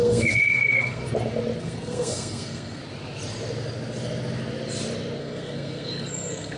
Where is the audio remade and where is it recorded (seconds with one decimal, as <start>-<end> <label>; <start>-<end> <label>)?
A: 0.0-1.0 remade; 1.0-1.6 recorded; 1.6-2.8 remade; 2.8-5.2 recorded; 5.2-6.6 remade